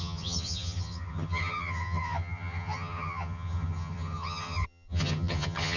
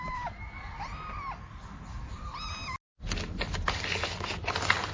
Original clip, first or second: second